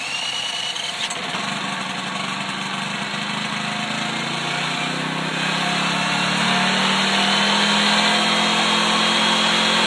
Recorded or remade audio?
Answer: recorded